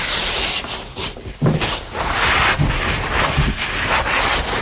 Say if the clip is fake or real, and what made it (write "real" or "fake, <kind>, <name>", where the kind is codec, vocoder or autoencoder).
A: real